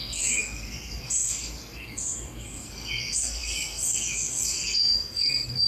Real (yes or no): no